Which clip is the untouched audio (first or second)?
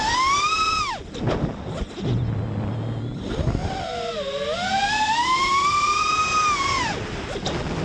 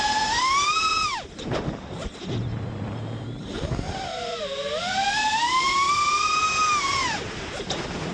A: first